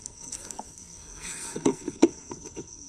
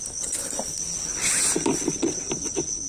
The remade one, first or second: first